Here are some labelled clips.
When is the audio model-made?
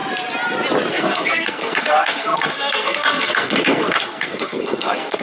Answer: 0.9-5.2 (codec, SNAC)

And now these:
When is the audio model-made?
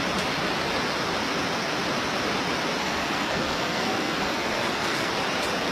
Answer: 2.8-5.1 (codec, SNAC)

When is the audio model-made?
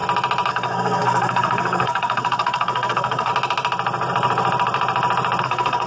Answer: 0.5-3.3 (codec, SNAC); 5.4-5.9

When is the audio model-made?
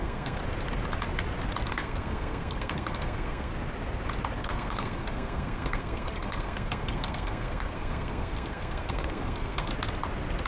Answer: 0.0-0.4 (codec, SNAC); 1.7-3.5; 4.4-9.7